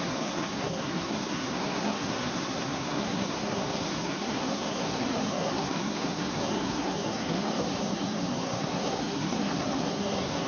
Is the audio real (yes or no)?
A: no